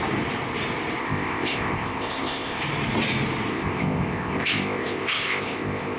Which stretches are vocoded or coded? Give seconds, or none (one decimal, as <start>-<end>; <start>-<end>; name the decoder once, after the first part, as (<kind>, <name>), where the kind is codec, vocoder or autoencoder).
1.0-2.6 (codec, ZipCodec); 3.5-6.0